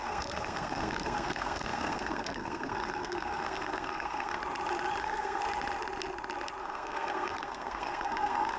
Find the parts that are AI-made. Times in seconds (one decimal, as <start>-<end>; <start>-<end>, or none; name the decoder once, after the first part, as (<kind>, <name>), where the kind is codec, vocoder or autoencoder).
0.0-4.4 (codec, SNAC); 5.0-5.4; 6.6-8.6